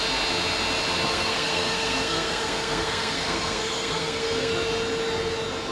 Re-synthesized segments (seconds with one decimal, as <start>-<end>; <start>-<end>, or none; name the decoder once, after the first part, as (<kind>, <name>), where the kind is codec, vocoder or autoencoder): 1.1-4.5 (codec, SNAC)